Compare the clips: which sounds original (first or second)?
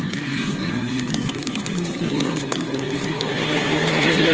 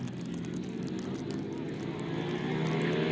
second